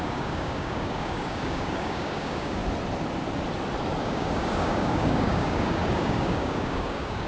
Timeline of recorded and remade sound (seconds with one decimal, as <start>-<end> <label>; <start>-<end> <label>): 0.0-2.6 remade; 2.6-4.0 recorded; 4.0-7.3 remade